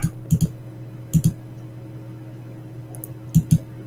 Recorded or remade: recorded